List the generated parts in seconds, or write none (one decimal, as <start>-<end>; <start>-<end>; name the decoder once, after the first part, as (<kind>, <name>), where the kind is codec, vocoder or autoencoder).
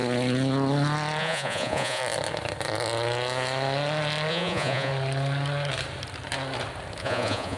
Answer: 1.2-2.0 (vocoder, Vocos); 4.3-4.9; 7.0-7.6